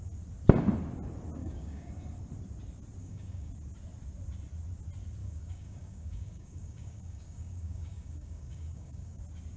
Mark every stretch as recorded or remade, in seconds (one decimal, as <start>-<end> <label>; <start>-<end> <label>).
0.0-1.4 recorded; 1.4-1.9 remade; 1.9-3.0 recorded; 3.0-3.5 remade; 3.5-5.2 recorded; 5.2-9.2 remade; 9.2-9.6 recorded